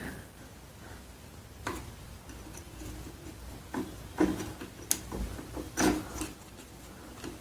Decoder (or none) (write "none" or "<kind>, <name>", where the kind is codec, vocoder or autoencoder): none